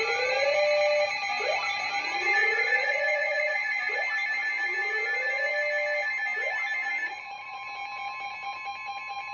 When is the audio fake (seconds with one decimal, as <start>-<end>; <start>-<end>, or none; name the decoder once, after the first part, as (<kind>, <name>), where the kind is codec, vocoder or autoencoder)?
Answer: 2.4-4.0 (vocoder, Vocos); 7.1-7.6